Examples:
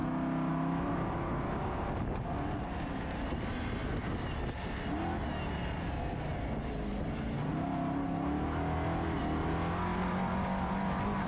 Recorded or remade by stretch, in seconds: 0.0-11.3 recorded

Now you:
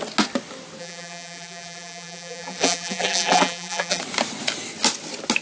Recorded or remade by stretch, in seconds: 0.0-0.8 recorded; 0.8-4.0 remade; 4.0-5.4 recorded

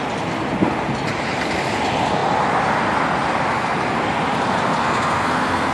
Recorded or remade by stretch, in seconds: 0.0-4.8 recorded; 4.8-5.7 remade

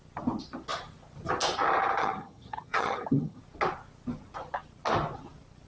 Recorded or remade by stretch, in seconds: 0.0-2.0 recorded; 2.0-3.4 remade; 3.4-5.7 recorded

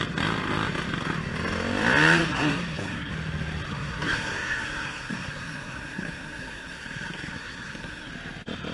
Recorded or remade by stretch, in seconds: 0.0-2.2 recorded; 2.2-3.1 remade; 3.1-3.7 recorded; 3.7-8.1 remade; 8.1-8.7 recorded

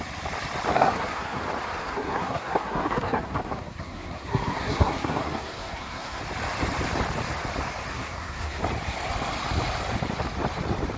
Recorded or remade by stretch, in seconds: 0.0-0.7 recorded; 0.7-1.4 remade; 1.4-1.8 recorded; 1.8-6.2 remade; 6.2-7.9 recorded; 7.9-8.6 remade; 8.6-11.0 recorded

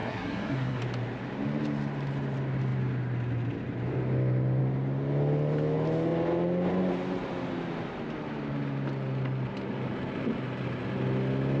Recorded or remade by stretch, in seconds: 0.0-0.8 remade; 0.8-11.6 recorded

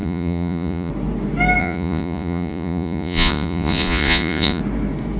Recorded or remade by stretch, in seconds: 0.0-0.9 remade; 0.9-1.6 recorded; 1.6-4.6 remade; 4.6-5.2 recorded